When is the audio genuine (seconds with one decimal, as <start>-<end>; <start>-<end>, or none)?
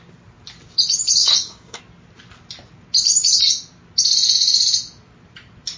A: 0.0-1.2; 1.8-5.8